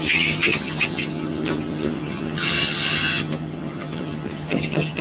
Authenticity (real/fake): fake